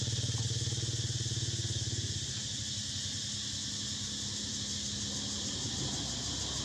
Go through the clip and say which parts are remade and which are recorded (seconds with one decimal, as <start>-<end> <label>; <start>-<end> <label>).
0.0-6.6 recorded